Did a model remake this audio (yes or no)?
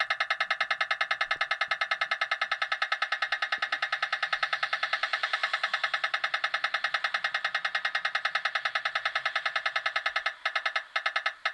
no